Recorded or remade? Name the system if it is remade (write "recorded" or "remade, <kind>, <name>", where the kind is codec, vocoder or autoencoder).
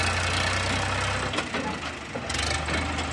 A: recorded